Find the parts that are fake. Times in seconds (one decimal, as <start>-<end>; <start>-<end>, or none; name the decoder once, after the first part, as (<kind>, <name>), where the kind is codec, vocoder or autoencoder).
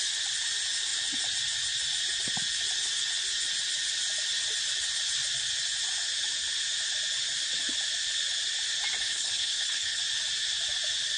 9.0-10.0 (codec, HILCodec)